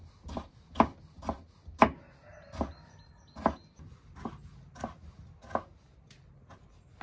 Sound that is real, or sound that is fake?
real